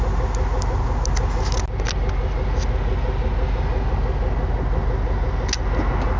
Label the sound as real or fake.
real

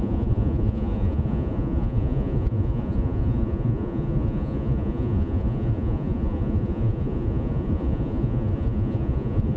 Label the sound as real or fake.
fake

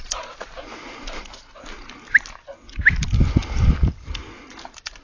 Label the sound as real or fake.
real